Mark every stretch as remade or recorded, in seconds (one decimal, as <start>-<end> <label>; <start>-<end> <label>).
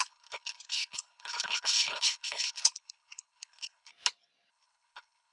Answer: 0.0-3.9 remade; 3.9-4.5 recorded; 4.5-5.3 remade